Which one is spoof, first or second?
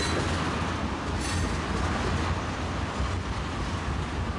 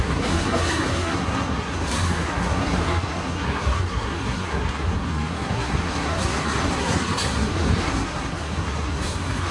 second